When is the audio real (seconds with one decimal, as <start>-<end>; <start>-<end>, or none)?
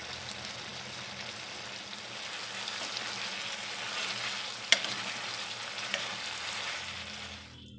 0.0-7.8